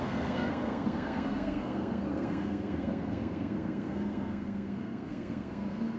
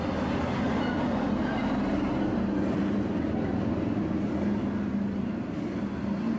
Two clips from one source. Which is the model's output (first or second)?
first